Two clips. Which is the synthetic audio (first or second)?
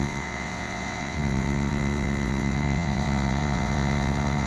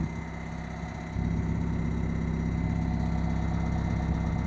first